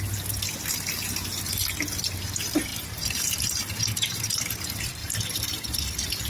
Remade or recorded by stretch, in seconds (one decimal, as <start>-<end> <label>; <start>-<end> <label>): 0.0-2.7 recorded; 2.7-4.5 remade; 4.5-5.0 recorded; 5.0-5.8 remade; 5.8-6.3 recorded